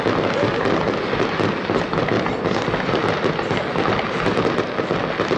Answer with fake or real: real